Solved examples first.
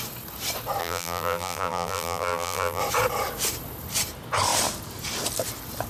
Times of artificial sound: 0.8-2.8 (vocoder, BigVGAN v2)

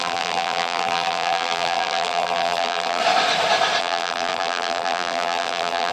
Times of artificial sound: 0.0-3.0 (vocoder, BigVGAN v2); 3.8-5.9

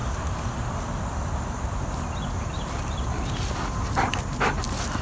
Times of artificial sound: 0.0-5.0 (vocoder, BigVGAN v2)

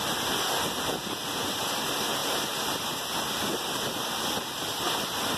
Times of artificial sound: none

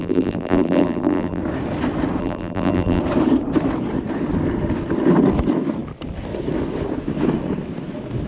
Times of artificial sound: 0.0-1.4 (vocoder, BigVGAN v2); 2.2-3.0

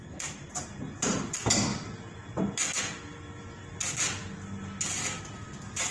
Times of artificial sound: none

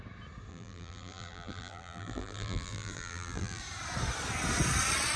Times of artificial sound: 0.5-3.6 (vocoder, BigVGAN v2)